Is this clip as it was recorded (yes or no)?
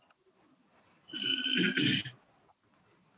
yes